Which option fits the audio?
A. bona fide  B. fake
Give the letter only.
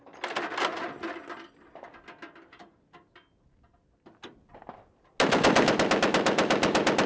A